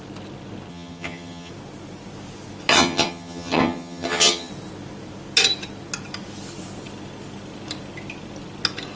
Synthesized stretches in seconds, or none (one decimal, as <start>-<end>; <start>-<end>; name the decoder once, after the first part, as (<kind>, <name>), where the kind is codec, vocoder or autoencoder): 0.7-1.5 (vocoder, HiFi-GAN); 2.7-4.5